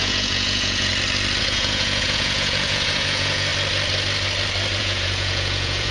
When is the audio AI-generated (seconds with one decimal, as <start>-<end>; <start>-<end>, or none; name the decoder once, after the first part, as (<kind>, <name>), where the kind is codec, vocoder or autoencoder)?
0.0-0.9 (vocoder, Vocos); 1.4-3.5; 4.8-5.9